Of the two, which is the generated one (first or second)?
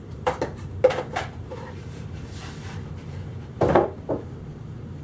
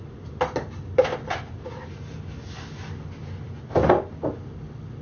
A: first